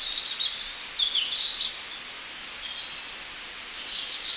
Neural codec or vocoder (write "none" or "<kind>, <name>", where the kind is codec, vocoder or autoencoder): none